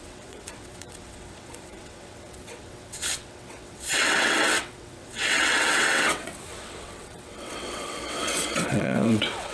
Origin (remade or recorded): remade